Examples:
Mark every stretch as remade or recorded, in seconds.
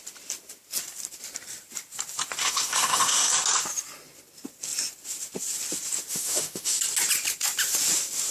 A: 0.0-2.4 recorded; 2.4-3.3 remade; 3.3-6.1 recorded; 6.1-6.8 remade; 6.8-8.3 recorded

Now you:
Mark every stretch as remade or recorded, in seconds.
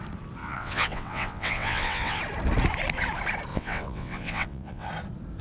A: 0.0-0.4 recorded; 0.4-2.2 remade; 2.2-3.5 recorded; 3.5-4.9 remade; 4.9-5.4 recorded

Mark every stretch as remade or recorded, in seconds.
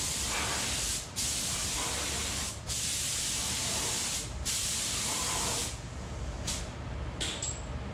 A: 0.0-5.6 recorded; 5.6-6.1 remade; 6.1-7.9 recorded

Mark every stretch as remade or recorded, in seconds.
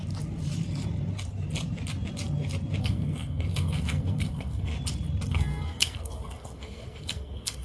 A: 0.0-2.8 recorded; 2.8-4.7 remade; 4.7-5.3 recorded; 5.3-7.6 remade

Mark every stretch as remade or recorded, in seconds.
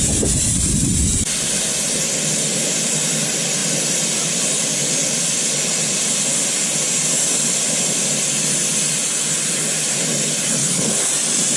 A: 0.0-10.6 recorded; 10.6-11.1 remade; 11.1-11.6 recorded